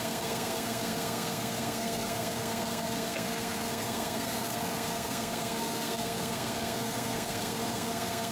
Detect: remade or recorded remade